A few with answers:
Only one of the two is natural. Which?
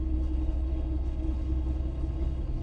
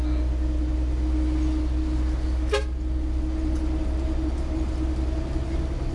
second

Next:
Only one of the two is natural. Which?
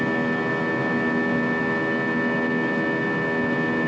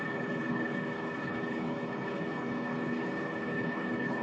first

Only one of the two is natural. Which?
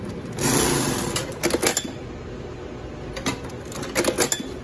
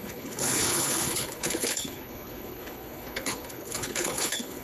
first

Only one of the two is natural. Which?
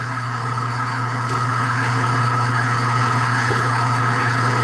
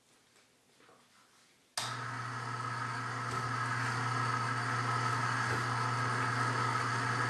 second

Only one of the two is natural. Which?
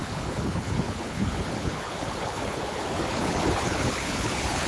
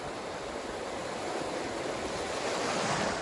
second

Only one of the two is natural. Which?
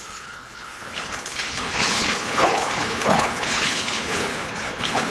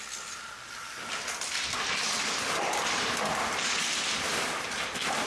second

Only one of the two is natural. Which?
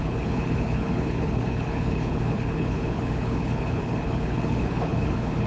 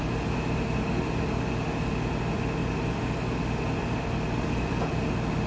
second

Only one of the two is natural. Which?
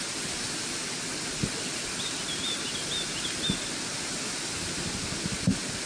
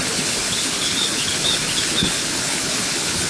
first